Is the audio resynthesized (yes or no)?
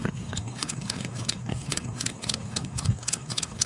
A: yes